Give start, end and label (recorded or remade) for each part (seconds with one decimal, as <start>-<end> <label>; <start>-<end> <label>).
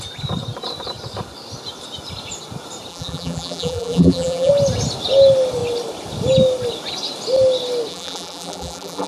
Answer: 0.0-2.9 recorded; 2.9-4.5 remade; 4.5-7.9 recorded; 7.9-9.1 remade